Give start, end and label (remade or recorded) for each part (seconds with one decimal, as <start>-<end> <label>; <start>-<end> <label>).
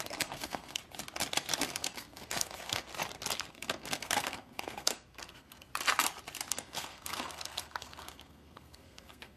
0.0-0.8 remade; 0.8-1.6 recorded; 1.6-2.9 remade; 2.9-3.5 recorded; 3.5-5.7 remade; 5.7-6.5 recorded; 6.5-9.4 remade